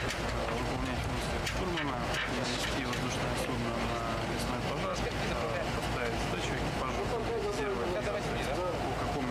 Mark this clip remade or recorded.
recorded